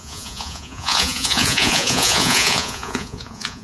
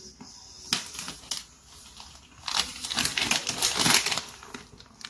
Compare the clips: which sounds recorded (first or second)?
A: second